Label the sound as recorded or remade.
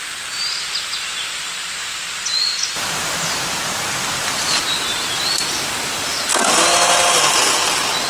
recorded